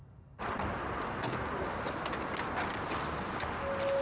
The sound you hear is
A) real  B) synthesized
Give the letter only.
A